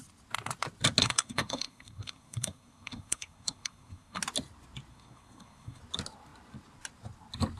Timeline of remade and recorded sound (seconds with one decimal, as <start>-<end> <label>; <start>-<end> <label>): 0.0-1.0 recorded; 1.0-4.2 remade; 4.2-4.9 recorded; 4.9-5.8 remade; 5.8-7.6 recorded